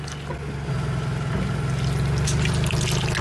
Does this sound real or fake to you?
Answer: real